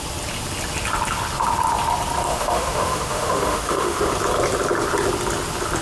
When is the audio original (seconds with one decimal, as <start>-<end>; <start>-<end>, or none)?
0.0-2.3; 4.1-5.8